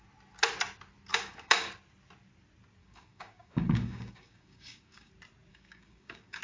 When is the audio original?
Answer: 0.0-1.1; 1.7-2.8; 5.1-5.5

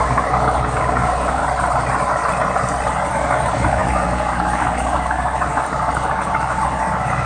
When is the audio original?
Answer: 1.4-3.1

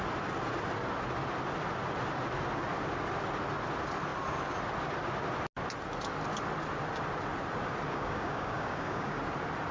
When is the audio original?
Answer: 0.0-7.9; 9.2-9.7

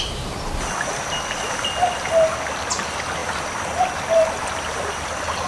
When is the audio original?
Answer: 0.0-5.5

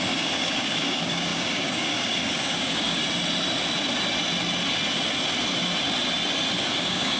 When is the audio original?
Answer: 3.0-6.7

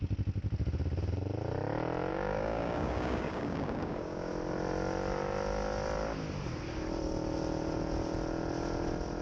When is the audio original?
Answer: 0.0-2.1; 4.3-9.2

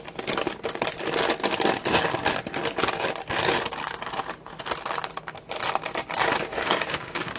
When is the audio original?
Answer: 0.0-6.5